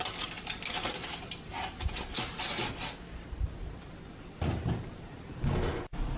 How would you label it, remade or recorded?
recorded